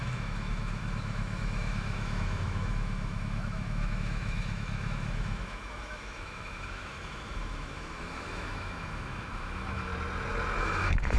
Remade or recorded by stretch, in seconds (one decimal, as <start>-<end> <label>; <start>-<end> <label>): 0.0-9.9 remade; 9.9-10.6 recorded; 10.6-11.2 remade